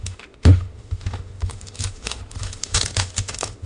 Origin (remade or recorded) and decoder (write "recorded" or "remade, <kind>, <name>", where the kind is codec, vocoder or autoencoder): remade, autoencoder, DAC-VAE